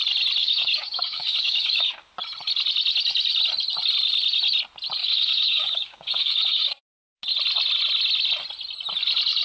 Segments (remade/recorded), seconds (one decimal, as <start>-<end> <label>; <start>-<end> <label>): 0.0-0.4 recorded; 0.4-2.1 remade; 2.1-5.0 recorded; 5.0-7.1 remade; 7.1-9.4 recorded

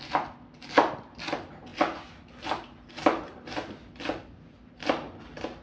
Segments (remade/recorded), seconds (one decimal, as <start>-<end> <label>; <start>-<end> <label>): 0.0-5.6 recorded

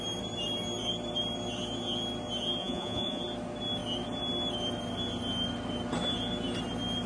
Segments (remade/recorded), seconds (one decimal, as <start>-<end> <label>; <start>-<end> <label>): 0.0-2.6 recorded; 2.6-3.2 remade; 3.2-7.1 recorded

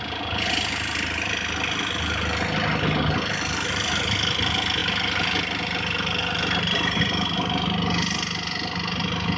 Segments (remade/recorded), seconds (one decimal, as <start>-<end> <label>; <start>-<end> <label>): 0.0-9.4 recorded

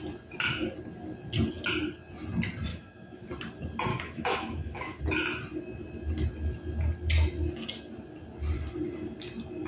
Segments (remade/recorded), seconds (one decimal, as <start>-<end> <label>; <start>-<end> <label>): 0.0-2.7 recorded; 2.7-3.3 remade; 3.3-3.9 recorded; 3.9-5.0 remade; 5.0-9.7 recorded